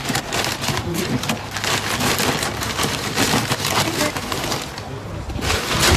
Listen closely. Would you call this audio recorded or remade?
recorded